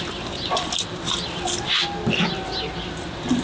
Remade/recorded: recorded